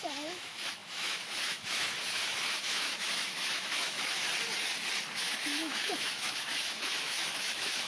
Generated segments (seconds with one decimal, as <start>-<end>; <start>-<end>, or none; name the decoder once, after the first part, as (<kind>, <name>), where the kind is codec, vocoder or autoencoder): 0.0-4.3 (autoencoder, DAC-VAE); 5.2-7.9